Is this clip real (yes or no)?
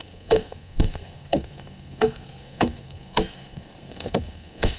no